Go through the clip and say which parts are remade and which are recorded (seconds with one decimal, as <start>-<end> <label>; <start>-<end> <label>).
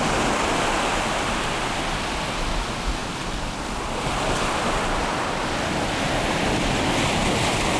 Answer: 0.0-7.8 recorded